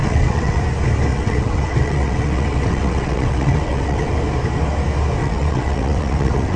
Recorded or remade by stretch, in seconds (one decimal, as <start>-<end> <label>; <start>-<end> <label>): 0.0-0.6 remade; 0.6-1.1 recorded; 1.1-4.1 remade; 4.1-5.2 recorded; 5.2-6.6 remade